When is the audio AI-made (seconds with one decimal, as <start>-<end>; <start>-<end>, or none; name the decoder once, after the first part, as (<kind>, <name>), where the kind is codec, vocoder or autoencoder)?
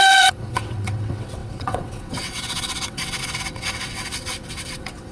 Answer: 0.0-5.1 (vocoder, WaveNeXt)